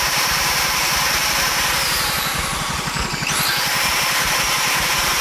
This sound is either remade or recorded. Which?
remade